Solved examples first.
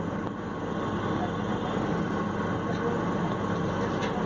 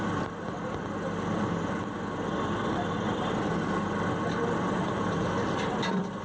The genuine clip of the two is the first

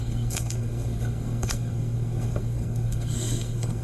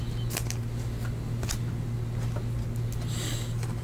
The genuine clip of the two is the second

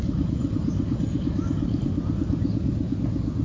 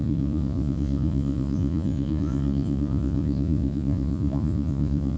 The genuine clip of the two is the first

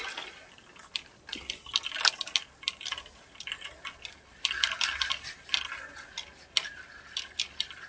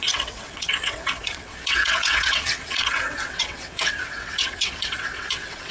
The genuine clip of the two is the first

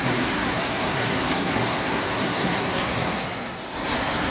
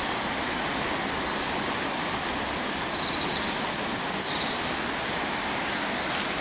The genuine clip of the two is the second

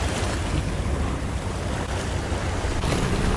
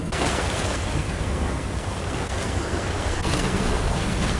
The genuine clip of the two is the first